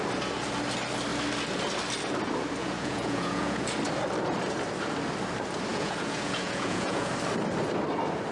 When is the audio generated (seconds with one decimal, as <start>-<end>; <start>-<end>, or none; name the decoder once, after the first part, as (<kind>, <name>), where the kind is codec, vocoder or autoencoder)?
2.6-3.6 (vocoder, Vocos); 5.7-7.1